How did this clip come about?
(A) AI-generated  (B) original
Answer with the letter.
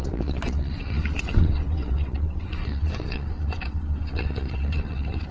A